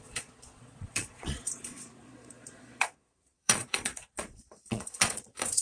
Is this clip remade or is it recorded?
remade